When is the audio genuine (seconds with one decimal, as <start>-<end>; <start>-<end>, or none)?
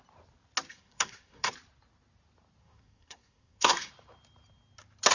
0.0-0.7; 1.5-2.6; 3.9-5.1